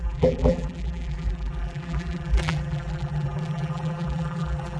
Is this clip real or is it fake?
fake